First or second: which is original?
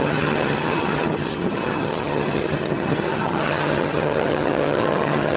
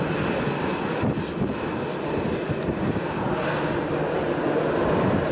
second